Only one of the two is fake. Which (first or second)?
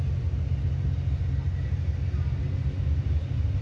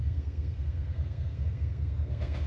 second